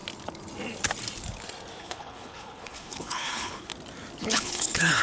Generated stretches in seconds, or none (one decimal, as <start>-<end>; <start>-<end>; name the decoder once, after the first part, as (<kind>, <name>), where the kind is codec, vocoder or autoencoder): 1.8-3.7 (codec, HILCodec); 4.2-5.0